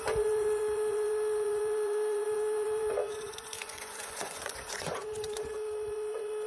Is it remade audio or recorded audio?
remade